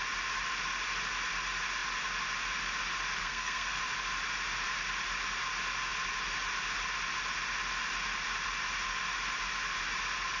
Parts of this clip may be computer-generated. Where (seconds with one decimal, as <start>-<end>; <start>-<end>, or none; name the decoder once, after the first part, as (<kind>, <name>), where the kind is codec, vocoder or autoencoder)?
3.2-3.8 (codec, SNAC)